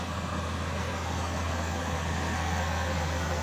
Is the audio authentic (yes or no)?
no